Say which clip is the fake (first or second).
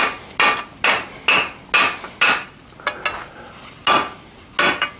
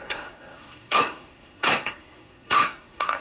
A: second